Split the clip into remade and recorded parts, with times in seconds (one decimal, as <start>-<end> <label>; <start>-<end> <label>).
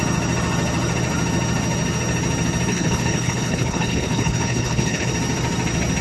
0.0-2.7 recorded; 2.7-5.1 remade; 5.1-6.0 recorded